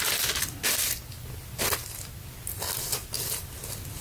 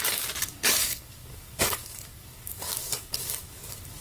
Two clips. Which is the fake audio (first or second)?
second